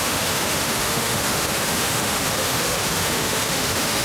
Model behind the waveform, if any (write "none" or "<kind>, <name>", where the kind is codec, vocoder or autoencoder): autoencoder, DAC-VAE